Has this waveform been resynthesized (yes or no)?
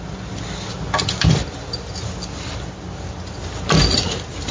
no